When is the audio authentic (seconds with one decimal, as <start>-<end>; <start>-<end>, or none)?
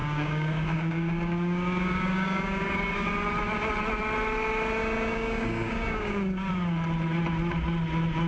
3.1-4.8; 6.5-8.3